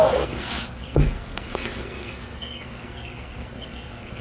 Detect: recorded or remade remade